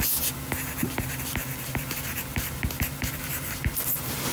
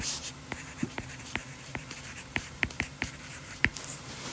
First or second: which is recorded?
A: first